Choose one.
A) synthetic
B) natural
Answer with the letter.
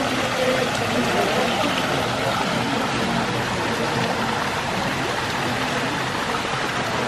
B